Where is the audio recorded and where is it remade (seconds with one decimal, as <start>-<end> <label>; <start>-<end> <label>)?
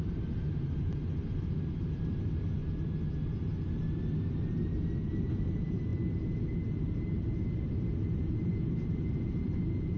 0.0-2.6 remade; 2.6-5.2 recorded; 5.2-10.0 remade